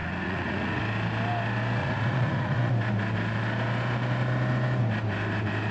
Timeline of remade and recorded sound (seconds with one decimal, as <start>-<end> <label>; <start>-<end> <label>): 0.0-0.8 remade; 0.8-1.8 recorded; 1.8-2.7 remade; 2.7-5.7 recorded